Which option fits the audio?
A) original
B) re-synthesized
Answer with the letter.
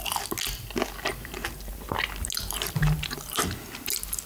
A